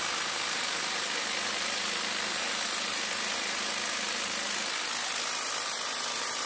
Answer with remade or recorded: recorded